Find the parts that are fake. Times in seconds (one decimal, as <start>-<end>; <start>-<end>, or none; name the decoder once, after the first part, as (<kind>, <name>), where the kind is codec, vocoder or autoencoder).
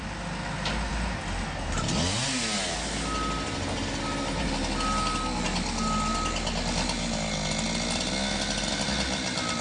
none